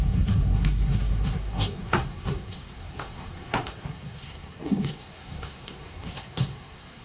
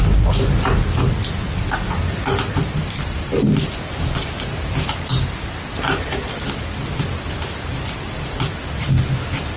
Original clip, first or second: second